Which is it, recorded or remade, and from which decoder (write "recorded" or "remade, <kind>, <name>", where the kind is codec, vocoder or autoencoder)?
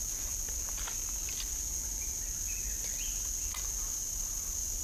recorded